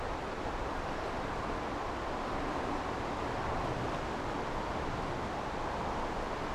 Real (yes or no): yes